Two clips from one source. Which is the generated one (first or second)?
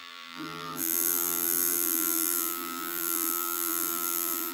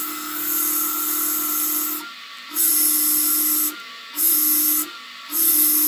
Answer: first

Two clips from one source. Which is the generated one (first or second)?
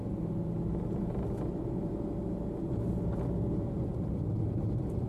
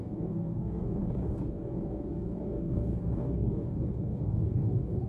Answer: second